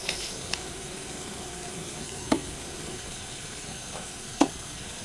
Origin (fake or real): fake